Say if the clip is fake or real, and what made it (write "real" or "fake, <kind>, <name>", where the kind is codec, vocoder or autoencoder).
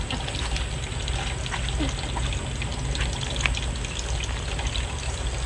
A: real